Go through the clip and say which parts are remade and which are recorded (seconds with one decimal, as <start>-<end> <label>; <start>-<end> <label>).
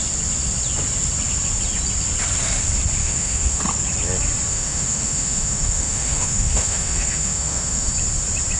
0.0-3.0 recorded; 3.0-3.6 remade; 3.6-4.5 recorded; 4.5-7.9 remade; 7.9-8.6 recorded